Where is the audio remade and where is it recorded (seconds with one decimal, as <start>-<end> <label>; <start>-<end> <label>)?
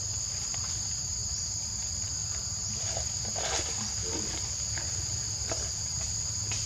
0.0-6.7 recorded